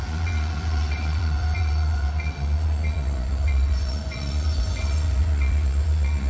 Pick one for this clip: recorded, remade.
remade